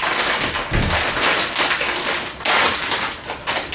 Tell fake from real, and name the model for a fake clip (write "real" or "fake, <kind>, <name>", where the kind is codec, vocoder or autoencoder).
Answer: real